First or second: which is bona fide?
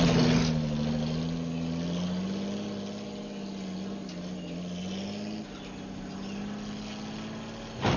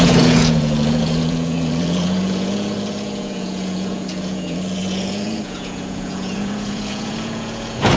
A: first